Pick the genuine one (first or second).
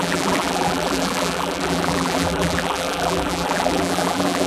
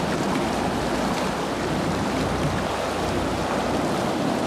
second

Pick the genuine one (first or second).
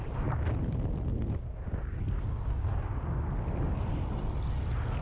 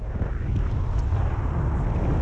second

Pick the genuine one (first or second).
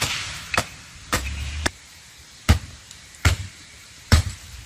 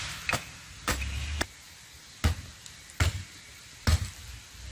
second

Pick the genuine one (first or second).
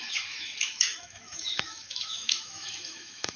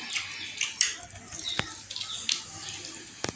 second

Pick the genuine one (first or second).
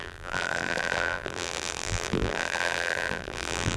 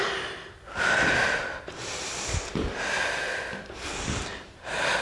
second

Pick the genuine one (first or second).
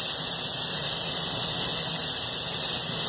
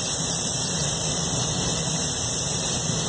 first